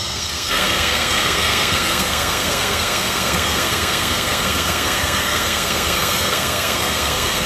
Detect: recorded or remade remade